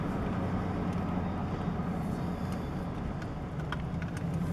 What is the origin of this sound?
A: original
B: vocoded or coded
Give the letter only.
A